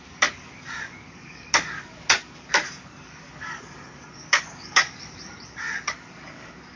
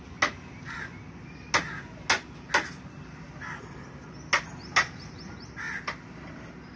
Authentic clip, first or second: second